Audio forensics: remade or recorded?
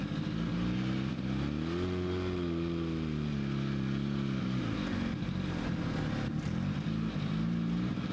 recorded